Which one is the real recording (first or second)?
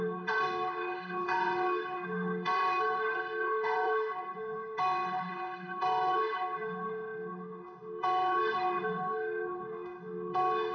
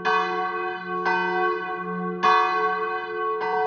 second